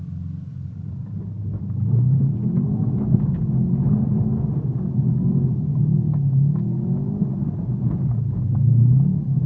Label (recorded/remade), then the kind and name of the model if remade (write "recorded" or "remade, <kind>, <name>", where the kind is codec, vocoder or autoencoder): recorded